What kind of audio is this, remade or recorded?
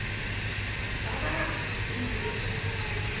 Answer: recorded